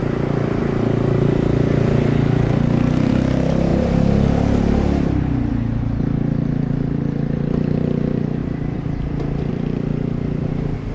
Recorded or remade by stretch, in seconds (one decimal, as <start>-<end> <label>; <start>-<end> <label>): 0.0-8.4 recorded; 8.4-9.5 remade; 9.5-9.9 recorded; 9.9-10.5 remade; 10.5-10.9 recorded